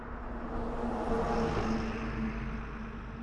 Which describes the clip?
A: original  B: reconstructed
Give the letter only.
A